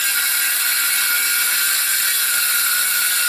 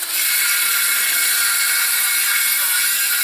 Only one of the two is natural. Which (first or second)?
first